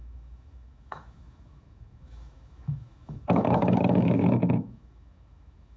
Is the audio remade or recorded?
remade